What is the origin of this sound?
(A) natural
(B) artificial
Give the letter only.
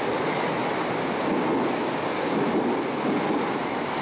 A